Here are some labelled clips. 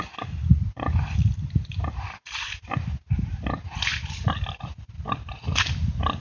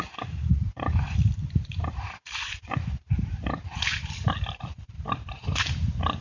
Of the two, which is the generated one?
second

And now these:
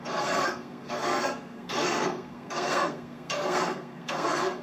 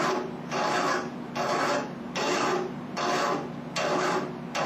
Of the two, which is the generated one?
first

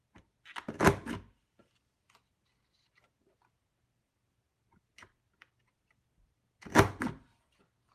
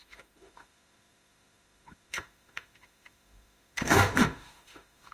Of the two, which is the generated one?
second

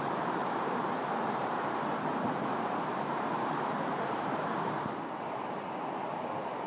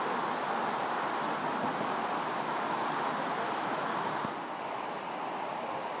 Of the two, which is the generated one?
first